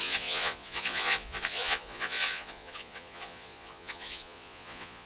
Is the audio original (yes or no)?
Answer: no